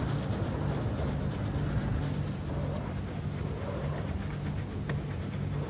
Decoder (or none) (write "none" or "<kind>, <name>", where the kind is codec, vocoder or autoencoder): none